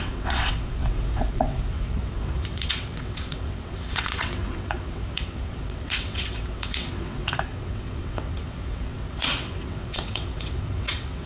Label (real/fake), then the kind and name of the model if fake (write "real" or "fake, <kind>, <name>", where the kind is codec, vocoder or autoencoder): fake, vocoder, WaveNeXt